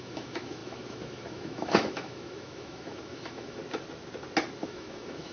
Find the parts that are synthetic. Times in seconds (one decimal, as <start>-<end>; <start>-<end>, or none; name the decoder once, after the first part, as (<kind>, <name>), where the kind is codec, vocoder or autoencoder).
0.0-3.6 (autoencoder, DAC-VAE); 4.6-5.3